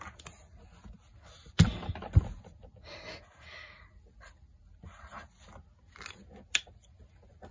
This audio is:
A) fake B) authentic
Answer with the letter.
B